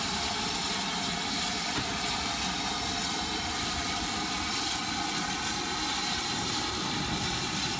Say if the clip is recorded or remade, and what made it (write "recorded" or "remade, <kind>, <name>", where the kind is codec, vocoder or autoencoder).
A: remade, vocoder, BigVGAN v2